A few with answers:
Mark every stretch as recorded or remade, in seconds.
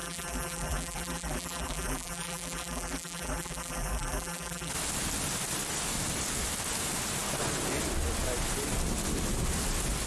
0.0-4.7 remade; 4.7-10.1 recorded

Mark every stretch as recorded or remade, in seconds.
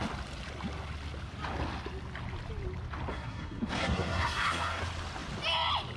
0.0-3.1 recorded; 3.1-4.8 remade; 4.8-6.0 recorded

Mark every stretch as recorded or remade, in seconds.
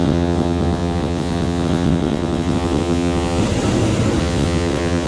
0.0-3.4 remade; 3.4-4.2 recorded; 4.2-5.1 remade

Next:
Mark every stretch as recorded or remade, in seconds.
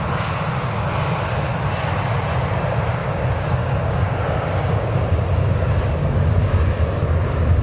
0.0-3.0 recorded; 3.0-5.2 remade; 5.2-6.0 recorded; 6.0-6.6 remade; 6.6-7.6 recorded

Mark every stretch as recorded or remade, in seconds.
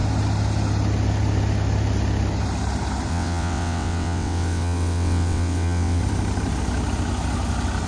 0.0-3.1 recorded; 3.1-6.0 remade; 6.0-7.9 recorded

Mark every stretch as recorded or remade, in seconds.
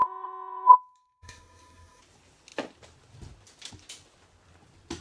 0.0-2.0 remade; 2.0-5.0 recorded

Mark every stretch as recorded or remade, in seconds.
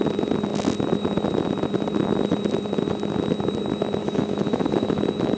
0.0-4.0 recorded; 4.0-5.0 remade; 5.0-5.4 recorded